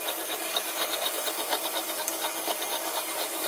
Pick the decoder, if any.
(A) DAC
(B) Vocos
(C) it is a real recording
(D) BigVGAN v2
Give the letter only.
A